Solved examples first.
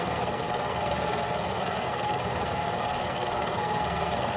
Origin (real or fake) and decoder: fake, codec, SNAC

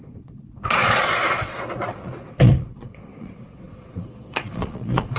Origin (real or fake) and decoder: fake, vocoder, Vocos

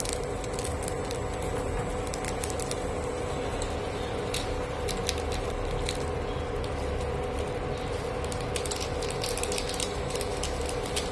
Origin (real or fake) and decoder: real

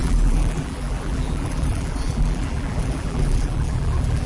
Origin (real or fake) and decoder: fake, vocoder, BigVGAN v2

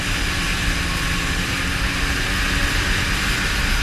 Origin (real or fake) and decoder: real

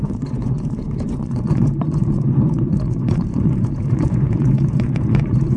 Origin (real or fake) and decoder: fake, vocoder, Vocos